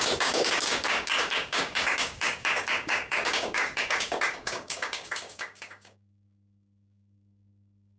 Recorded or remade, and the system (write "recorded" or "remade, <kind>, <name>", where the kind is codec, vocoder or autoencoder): remade, codec, DAC